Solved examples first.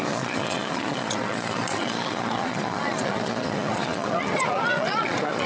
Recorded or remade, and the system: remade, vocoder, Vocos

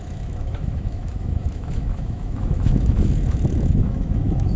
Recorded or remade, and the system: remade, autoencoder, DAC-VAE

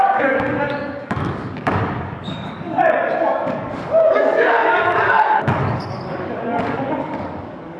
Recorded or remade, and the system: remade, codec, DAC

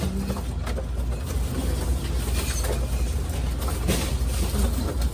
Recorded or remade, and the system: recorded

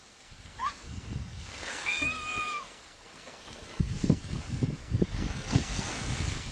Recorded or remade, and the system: remade, codec, SNAC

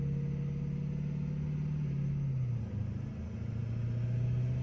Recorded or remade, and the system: recorded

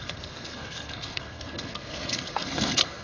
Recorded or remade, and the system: remade, codec, SNAC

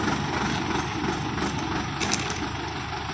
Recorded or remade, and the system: recorded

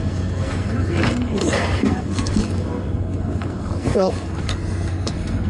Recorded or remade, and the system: remade, codec, SNAC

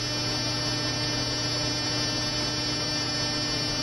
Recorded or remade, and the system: recorded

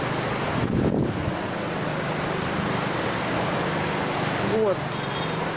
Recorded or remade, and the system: recorded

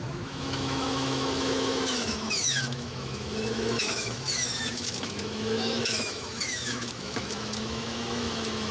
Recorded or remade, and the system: remade, autoencoder, DAC-VAE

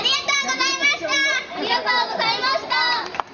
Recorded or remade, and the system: remade, vocoder, BigVGAN v2